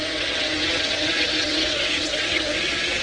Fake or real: fake